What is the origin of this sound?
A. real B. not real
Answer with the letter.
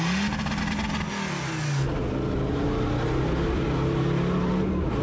A